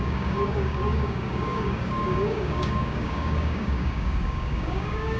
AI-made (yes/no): yes